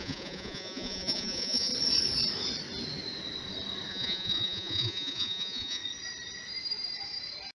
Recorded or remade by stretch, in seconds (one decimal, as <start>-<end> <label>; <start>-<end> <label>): 0.0-1.7 remade; 1.7-3.9 recorded; 3.9-5.8 remade; 5.8-7.6 recorded